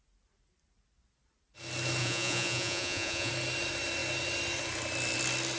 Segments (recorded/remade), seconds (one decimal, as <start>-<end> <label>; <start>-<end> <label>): 0.0-2.0 recorded; 2.0-3.3 remade; 3.3-5.6 recorded